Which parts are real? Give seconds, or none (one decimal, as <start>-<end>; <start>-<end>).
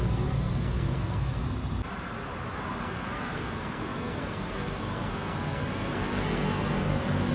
1.4-2.8